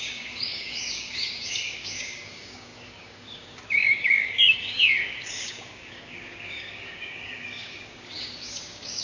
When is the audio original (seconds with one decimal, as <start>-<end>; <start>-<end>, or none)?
none